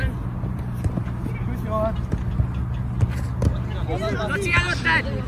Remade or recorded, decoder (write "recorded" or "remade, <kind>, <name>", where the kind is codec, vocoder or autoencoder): recorded